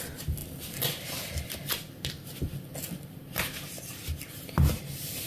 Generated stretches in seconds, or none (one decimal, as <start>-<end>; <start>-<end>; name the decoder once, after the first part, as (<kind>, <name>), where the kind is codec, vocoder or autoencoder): none